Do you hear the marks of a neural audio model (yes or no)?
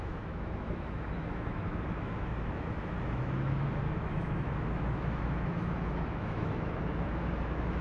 yes